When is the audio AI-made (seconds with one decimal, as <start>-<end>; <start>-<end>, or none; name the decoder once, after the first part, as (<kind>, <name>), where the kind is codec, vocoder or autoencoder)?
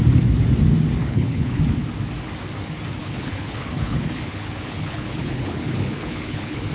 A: 1.0-1.6 (codec, HILCodec); 3.0-6.7